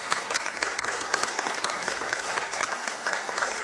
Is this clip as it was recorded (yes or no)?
no